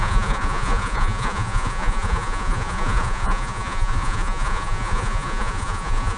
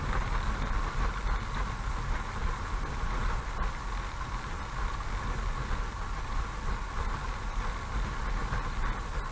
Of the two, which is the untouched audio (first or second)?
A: second